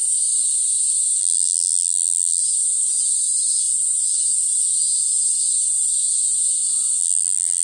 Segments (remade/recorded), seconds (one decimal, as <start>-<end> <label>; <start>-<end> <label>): 0.0-1.2 recorded; 1.2-2.4 remade; 2.4-7.0 recorded; 7.0-7.6 remade